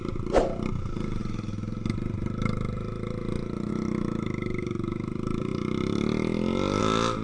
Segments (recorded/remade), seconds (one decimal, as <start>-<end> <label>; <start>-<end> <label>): 0.0-7.2 recorded